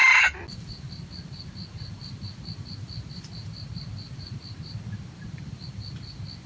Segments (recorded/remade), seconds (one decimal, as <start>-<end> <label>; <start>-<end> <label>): 0.0-6.5 recorded